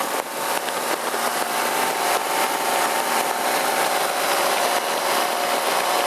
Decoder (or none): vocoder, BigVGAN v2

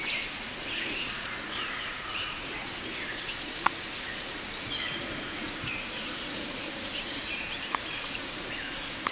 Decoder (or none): vocoder, Vocos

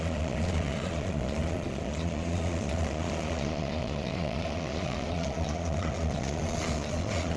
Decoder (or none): vocoder, Vocos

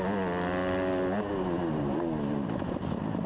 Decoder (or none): none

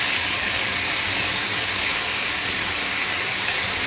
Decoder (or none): codec, DAC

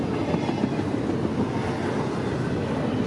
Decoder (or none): none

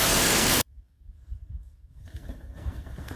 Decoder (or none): codec, SNAC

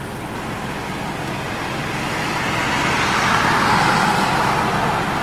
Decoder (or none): none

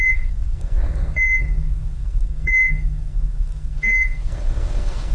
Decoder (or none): codec, SNAC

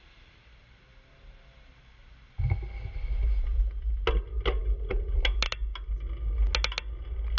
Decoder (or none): none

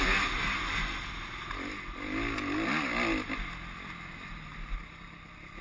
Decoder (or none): none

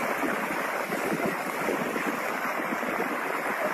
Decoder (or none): none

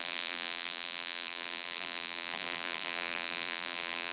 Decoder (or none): vocoder, BigVGAN v2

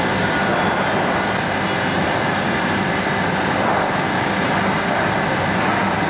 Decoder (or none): none